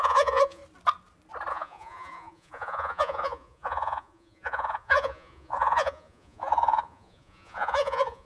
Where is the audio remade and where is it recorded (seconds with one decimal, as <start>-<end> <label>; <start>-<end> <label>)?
0.0-0.6 remade; 0.6-1.5 recorded; 1.5-8.3 remade